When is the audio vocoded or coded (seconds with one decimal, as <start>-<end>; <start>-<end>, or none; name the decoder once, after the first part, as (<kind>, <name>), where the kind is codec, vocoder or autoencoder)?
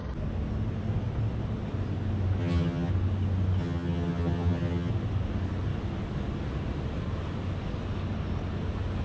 2.4-2.9 (vocoder, HiFi-GAN); 3.6-4.9